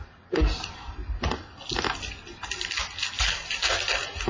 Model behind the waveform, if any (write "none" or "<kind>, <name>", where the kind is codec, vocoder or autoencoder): none